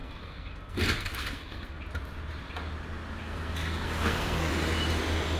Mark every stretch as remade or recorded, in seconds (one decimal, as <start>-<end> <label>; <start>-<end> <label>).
0.0-1.8 remade; 1.8-3.2 recorded; 3.2-4.5 remade; 4.5-5.4 recorded